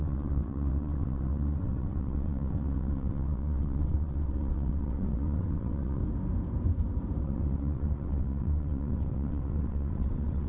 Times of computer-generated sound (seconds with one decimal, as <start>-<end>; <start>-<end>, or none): 0.0-6.0; 7.2-10.5